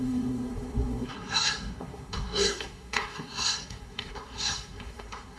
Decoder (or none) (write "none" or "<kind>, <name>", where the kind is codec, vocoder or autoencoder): codec, SNAC